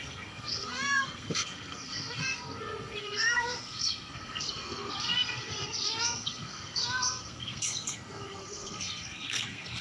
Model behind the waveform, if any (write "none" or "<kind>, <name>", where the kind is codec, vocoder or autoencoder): codec, SNAC